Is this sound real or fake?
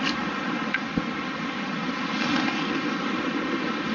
real